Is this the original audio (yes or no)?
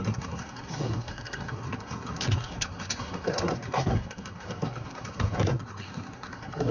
no